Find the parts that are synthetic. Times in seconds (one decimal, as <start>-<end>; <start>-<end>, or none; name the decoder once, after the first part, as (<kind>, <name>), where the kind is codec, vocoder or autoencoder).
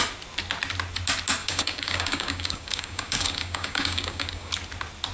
1.4-4.5 (codec, DAC)